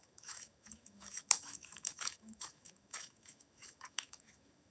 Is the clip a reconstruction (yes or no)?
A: yes